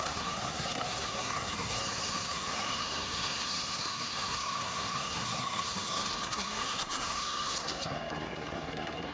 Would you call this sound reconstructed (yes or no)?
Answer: yes